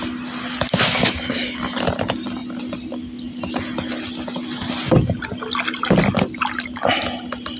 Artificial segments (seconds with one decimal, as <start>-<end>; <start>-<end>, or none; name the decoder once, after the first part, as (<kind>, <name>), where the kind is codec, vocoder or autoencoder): none